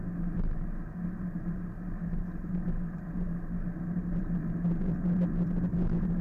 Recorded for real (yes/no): yes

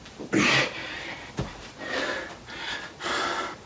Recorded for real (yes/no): yes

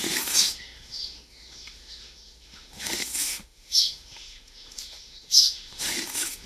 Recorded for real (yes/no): no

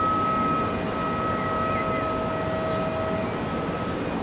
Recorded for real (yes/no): yes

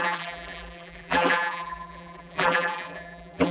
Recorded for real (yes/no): no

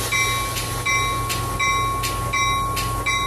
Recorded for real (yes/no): yes